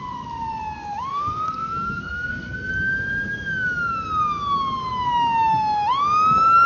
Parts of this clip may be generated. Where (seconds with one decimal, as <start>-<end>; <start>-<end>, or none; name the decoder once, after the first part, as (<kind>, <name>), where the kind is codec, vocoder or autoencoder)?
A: 1.1-2.7 (codec, SNAC)